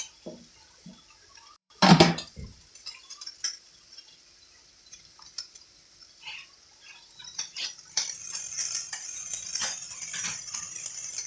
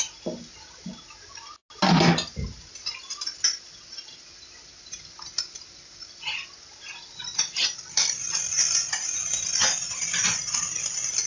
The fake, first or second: first